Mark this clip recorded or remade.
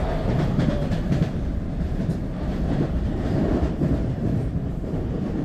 remade